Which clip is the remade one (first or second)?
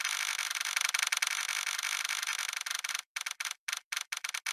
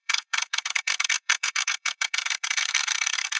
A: second